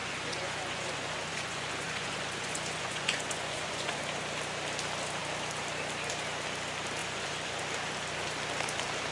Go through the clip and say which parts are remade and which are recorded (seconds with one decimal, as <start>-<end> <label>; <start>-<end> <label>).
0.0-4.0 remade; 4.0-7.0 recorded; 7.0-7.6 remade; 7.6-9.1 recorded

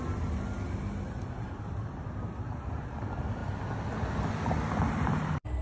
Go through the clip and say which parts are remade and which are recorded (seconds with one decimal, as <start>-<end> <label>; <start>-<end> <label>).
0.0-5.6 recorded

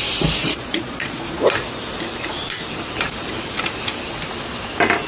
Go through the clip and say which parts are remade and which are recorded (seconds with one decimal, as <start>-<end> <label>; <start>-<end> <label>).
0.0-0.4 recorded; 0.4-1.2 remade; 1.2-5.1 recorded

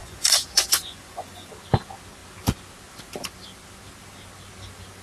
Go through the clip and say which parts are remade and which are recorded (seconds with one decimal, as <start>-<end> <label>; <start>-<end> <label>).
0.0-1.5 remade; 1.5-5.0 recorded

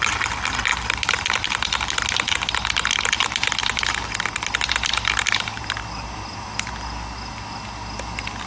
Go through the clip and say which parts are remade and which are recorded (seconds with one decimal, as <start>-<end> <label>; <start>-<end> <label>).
0.0-8.5 recorded

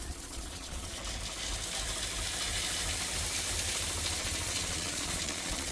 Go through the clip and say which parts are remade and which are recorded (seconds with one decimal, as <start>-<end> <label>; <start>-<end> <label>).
0.0-1.0 remade; 1.0-4.2 recorded; 4.2-5.7 remade